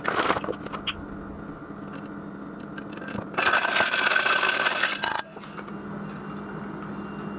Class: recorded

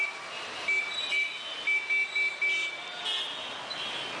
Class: recorded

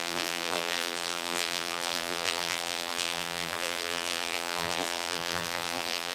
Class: remade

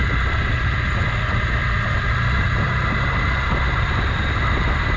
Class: recorded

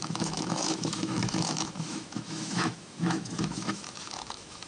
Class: remade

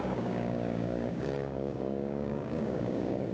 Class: remade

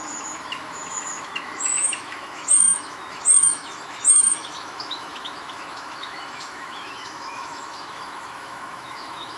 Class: remade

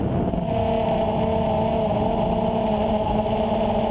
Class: recorded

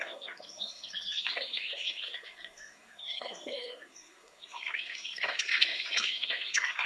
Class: remade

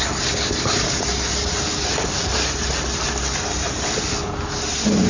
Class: recorded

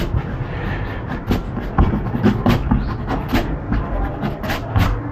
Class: recorded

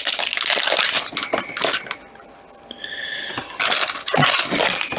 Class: remade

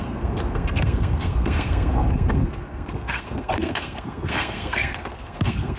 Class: remade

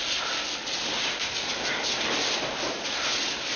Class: recorded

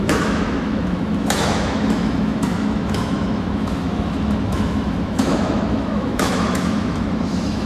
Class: remade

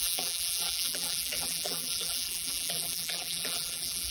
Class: remade